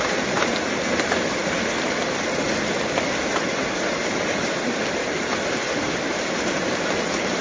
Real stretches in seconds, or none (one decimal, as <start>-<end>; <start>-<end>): 0.0-7.4